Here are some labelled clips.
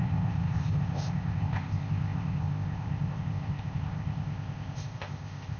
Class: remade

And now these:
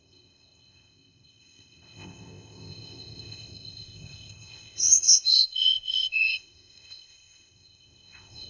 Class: remade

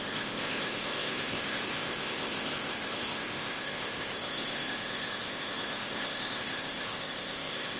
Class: remade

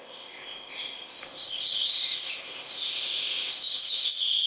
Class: remade